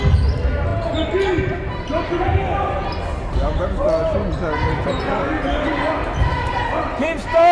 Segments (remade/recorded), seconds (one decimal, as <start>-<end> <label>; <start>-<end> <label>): 0.0-7.5 recorded